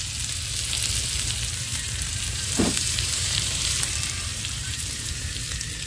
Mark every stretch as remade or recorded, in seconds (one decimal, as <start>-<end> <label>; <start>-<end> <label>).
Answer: 0.0-1.7 recorded; 1.7-3.9 remade; 3.9-4.3 recorded; 4.3-5.3 remade; 5.3-5.9 recorded